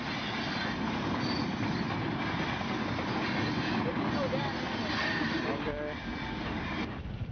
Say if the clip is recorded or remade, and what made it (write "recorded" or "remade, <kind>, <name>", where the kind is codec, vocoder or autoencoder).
recorded